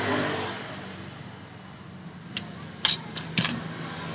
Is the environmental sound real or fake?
real